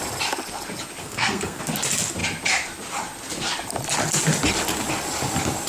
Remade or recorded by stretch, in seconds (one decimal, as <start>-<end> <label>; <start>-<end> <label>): 0.0-1.0 recorded; 1.0-1.6 remade; 1.6-5.7 recorded